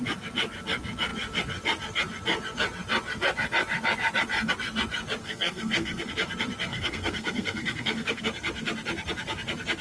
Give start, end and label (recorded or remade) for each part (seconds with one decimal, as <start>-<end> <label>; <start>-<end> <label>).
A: 0.0-5.2 recorded; 5.2-6.1 remade; 6.1-6.7 recorded; 6.7-8.2 remade; 8.2-9.8 recorded